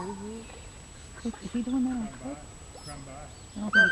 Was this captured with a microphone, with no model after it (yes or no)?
yes